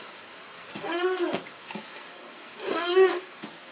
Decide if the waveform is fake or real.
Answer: fake